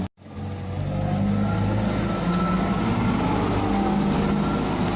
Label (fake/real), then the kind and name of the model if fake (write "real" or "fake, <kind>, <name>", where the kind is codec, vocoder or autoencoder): real